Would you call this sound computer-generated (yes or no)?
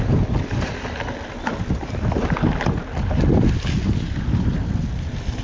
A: no